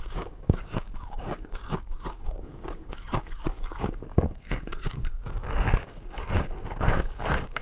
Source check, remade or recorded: remade